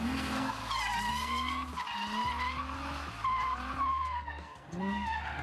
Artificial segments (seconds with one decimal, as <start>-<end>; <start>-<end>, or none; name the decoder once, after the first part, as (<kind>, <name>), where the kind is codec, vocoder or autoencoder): 0.0-0.6 (codec, SNAC); 1.1-1.7; 3.9-5.4